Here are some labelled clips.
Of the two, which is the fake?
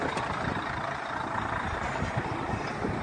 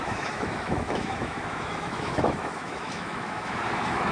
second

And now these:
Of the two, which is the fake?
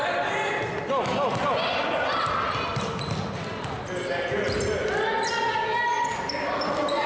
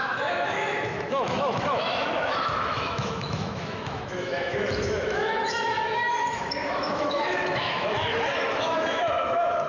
second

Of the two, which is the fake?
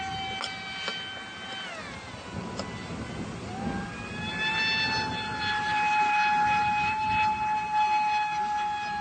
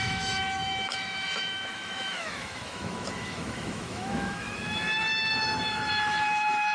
second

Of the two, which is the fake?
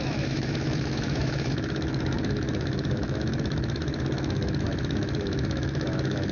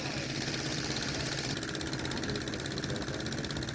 first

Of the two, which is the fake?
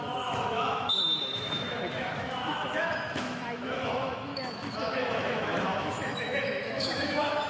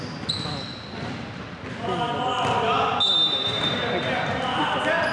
first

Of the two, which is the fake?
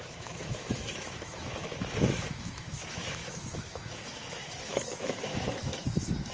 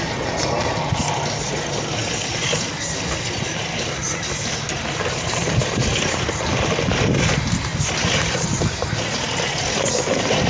first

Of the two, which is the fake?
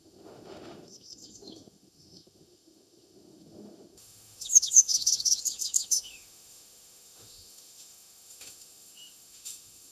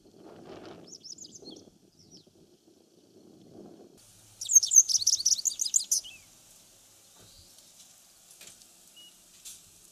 first